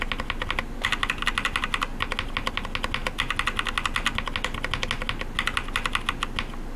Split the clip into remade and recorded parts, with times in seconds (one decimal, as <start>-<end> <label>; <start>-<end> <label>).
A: 0.0-6.8 recorded